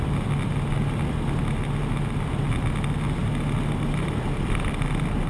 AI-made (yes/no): no